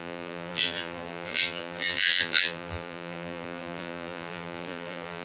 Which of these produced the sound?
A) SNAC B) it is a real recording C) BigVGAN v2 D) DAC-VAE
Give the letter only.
C